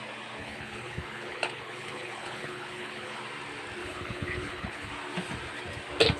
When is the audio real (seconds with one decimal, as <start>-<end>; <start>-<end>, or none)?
0.0-0.4; 3.2-3.8; 4.9-6.2